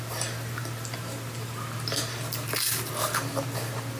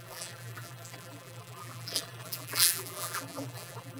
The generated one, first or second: second